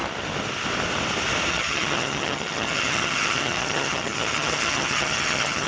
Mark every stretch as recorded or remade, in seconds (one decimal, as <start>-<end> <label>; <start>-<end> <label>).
0.0-1.5 recorded; 1.5-5.7 remade